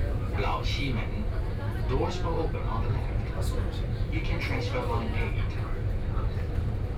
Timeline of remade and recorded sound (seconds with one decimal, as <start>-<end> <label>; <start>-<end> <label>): 0.0-7.0 recorded